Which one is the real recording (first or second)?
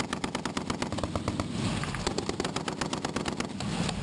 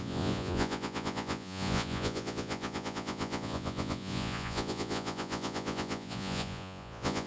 first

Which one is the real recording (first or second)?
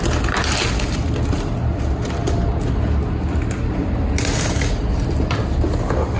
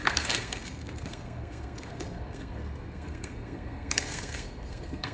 first